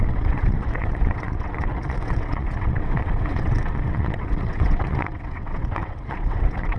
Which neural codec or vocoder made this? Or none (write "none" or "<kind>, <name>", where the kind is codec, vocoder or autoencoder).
vocoder, WaveNeXt